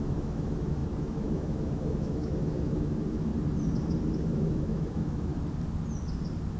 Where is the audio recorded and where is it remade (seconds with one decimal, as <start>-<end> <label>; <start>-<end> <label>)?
0.0-3.3 remade; 3.3-4.2 recorded; 4.2-5.3 remade; 5.3-6.6 recorded

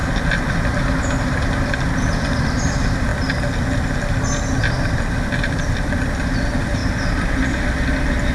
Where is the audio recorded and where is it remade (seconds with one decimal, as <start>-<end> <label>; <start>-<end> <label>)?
0.0-3.1 remade; 3.1-4.7 recorded; 4.7-6.8 remade; 6.8-7.4 recorded; 7.4-8.3 remade

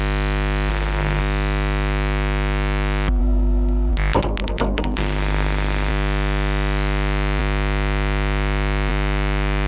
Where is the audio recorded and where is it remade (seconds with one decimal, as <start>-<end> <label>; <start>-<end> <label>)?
0.0-0.7 recorded; 0.7-1.2 remade; 1.2-3.2 recorded; 3.2-3.9 remade; 3.9-4.4 recorded; 4.4-5.9 remade; 5.9-9.7 recorded

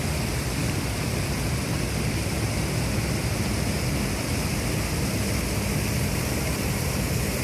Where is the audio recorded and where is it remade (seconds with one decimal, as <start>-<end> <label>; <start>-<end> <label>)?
0.0-7.4 recorded

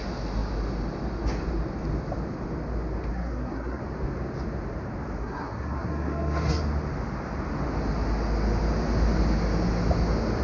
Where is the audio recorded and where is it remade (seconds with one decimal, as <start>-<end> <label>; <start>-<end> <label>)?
0.0-3.1 recorded; 3.1-3.8 remade; 3.8-5.2 recorded; 5.2-6.6 remade; 6.6-10.4 recorded

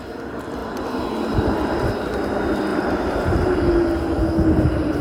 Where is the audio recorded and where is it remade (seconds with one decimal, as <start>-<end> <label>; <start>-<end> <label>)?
0.0-2.7 recorded; 2.7-3.5 remade; 3.5-5.0 recorded